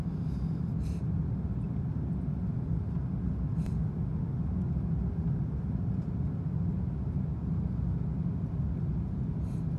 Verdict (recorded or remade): recorded